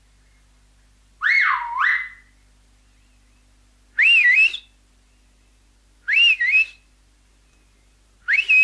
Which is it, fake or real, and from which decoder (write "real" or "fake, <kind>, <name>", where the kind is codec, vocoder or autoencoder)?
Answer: real